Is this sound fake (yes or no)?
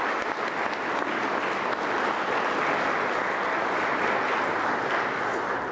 no